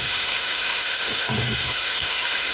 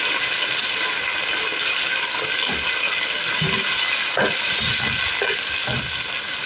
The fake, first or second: first